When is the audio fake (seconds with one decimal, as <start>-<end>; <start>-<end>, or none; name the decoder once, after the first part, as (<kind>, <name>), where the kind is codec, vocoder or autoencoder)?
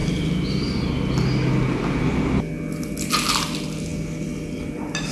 none